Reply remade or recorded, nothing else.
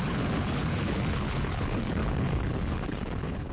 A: remade